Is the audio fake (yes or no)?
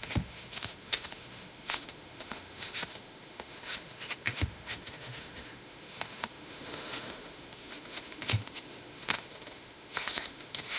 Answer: yes